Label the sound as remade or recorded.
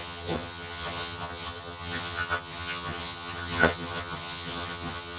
remade